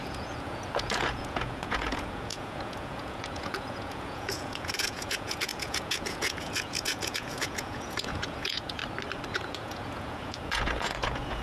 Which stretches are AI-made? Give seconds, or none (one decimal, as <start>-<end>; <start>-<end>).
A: 0.0-8.8; 9.3-11.4